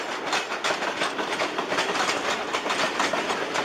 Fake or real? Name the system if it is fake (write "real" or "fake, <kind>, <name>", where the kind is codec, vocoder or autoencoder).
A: real